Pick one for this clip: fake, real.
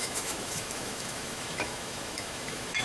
fake